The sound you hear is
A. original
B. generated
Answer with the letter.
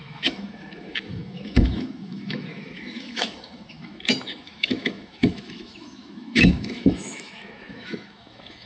B